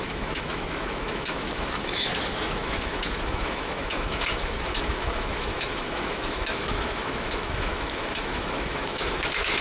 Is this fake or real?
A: fake